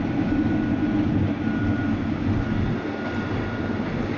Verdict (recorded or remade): recorded